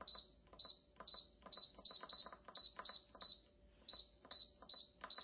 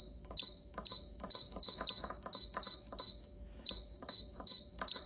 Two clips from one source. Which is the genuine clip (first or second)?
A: first